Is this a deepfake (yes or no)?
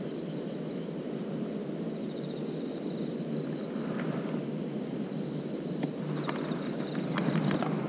no